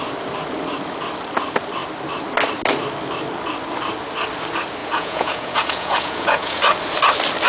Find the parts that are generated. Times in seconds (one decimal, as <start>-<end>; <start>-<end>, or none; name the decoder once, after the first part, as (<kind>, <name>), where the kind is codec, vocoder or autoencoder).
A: 4.8-6.6 (vocoder, Vocos)